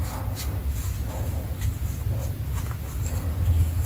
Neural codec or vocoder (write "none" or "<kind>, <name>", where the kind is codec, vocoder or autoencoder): none